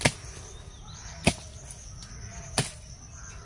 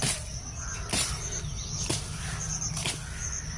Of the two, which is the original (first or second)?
first